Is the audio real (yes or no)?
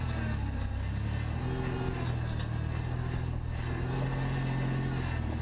yes